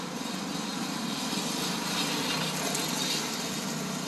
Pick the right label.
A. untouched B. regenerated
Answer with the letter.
A